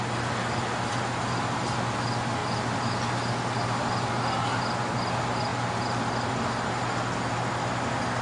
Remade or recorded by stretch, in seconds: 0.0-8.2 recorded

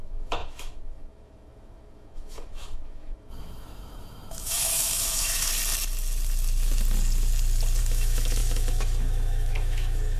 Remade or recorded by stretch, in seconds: 0.0-5.5 remade; 5.5-7.8 recorded; 7.8-10.2 remade

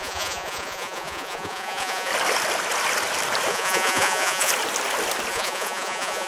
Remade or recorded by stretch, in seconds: 0.0-2.1 remade; 2.1-3.5 recorded; 3.5-4.5 remade; 4.5-5.3 recorded; 5.3-6.3 remade

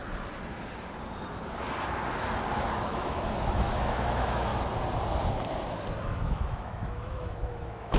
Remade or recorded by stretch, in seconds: 0.0-2.9 recorded; 2.9-4.5 remade; 4.5-6.0 recorded; 6.0-8.0 remade

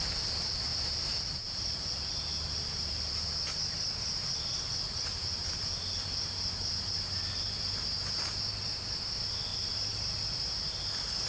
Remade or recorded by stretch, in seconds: 0.0-0.7 recorded; 0.7-3.1 remade; 3.1-5.9 recorded; 5.9-6.5 remade; 6.5-9.5 recorded; 9.5-10.2 remade; 10.2-11.3 recorded